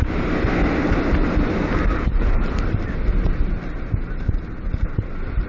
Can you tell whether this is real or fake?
real